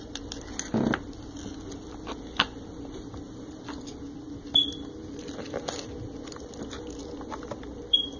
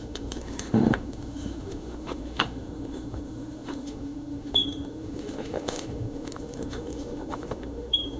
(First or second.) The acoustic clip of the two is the first